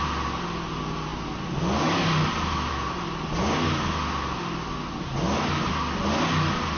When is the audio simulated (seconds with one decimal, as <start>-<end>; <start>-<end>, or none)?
none